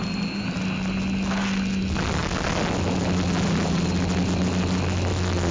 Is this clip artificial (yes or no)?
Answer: no